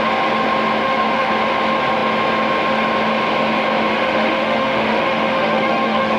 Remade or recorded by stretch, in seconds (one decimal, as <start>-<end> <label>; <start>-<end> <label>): 0.0-0.8 recorded; 0.8-1.3 remade; 1.3-3.9 recorded; 3.9-6.2 remade